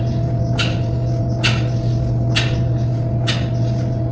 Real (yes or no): yes